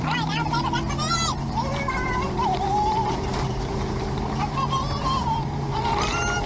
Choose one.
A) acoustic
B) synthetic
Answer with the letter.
B